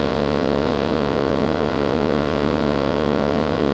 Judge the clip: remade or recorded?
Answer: remade